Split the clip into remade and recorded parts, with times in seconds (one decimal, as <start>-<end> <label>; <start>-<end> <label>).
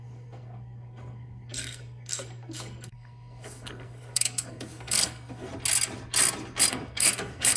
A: 0.0-5.5 remade; 5.5-6.7 recorded; 6.7-7.6 remade